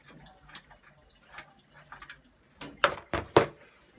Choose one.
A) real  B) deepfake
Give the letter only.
A